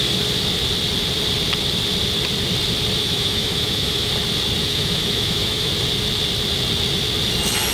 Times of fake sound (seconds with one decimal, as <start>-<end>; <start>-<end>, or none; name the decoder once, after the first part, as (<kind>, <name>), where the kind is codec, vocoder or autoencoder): 3.0-4.1 (autoencoder, DAC-VAE); 4.6-5.7

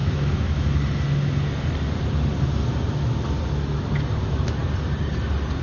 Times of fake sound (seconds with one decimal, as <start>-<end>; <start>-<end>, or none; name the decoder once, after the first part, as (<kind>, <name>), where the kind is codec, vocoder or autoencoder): 0.0-0.8 (autoencoder, DAC-VAE)

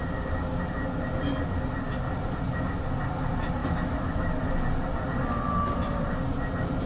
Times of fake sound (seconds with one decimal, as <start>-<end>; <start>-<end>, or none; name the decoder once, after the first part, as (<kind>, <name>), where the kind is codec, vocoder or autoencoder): 3.6-4.4 (autoencoder, DAC-VAE)

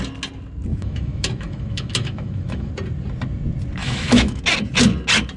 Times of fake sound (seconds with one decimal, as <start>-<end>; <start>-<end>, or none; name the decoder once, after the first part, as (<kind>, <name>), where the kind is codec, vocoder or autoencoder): 0.7-2.7 (autoencoder, DAC-VAE); 3.8-4.4

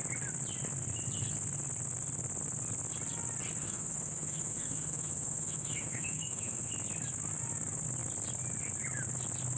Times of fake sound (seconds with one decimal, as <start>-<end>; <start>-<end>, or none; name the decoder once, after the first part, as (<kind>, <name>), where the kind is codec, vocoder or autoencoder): 3.6-6.7 (autoencoder, DAC-VAE)